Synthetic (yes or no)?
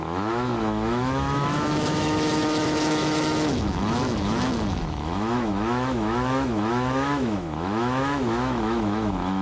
yes